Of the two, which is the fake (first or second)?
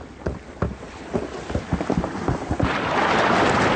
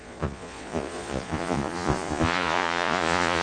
second